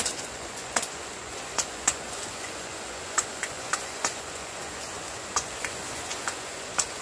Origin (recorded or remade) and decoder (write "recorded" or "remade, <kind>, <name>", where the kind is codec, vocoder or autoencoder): remade, vocoder, Vocos